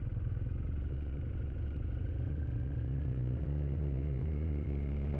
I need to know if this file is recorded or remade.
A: remade